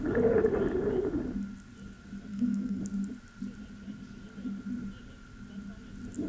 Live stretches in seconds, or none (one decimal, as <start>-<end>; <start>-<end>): 0.0-2.3; 2.8-6.3